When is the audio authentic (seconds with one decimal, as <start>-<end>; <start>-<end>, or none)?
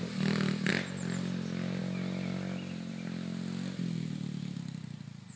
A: 0.0-5.4